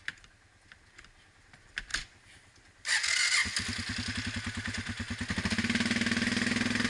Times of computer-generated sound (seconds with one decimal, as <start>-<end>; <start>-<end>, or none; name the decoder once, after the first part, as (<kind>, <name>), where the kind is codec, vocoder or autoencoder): 1.9-2.9 (vocoder, BigVGAN v2)